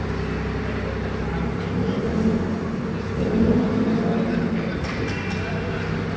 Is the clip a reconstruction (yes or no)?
no